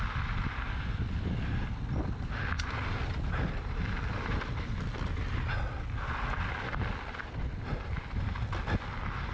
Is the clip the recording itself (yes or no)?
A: yes